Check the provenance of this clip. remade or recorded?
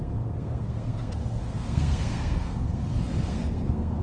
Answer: remade